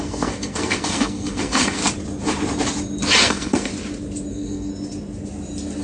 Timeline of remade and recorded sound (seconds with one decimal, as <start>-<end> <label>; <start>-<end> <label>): 0.0-1.8 remade; 1.8-3.2 recorded; 3.2-3.7 remade; 3.7-4.3 recorded; 4.3-4.7 remade; 4.7-5.8 recorded